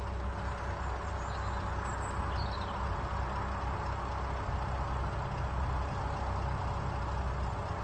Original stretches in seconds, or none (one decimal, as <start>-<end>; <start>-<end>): 0.0-7.8